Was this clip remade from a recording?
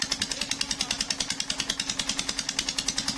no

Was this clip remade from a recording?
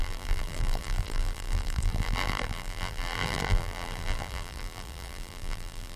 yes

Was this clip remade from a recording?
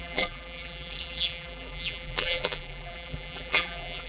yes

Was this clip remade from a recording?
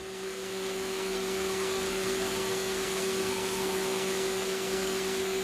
yes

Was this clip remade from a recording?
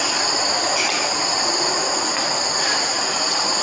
no